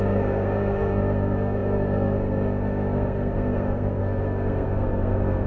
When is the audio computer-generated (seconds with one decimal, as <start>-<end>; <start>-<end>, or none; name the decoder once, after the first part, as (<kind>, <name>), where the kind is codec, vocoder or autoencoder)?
0.0-5.5 (codec, SNAC)